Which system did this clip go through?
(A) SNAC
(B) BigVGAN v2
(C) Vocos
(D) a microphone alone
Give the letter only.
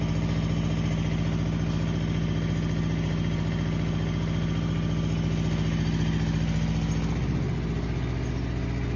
D